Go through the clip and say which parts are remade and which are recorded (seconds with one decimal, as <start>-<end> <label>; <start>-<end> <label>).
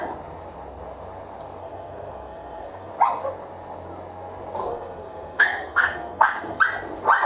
0.0-1.6 recorded; 1.6-2.9 remade; 2.9-4.7 recorded; 4.7-6.6 remade; 6.6-7.3 recorded